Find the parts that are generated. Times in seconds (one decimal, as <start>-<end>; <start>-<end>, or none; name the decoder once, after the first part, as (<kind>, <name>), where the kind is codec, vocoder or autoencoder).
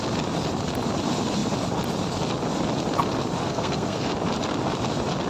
3.4-4.1 (codec, SNAC)